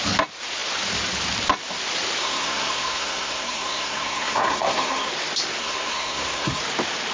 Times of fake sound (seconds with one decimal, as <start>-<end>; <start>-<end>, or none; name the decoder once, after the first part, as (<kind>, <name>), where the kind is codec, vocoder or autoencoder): 2.2-5.1 (codec, SNAC); 5.6-6.6